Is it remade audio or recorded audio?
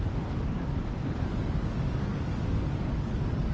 remade